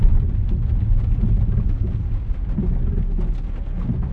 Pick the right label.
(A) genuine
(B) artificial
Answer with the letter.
A